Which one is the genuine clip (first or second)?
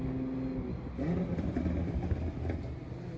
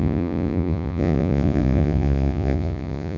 first